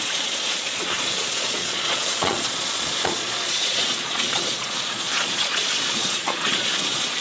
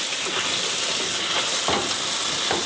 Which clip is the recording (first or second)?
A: second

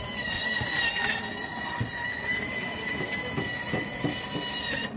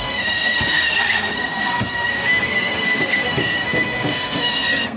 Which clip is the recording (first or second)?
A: first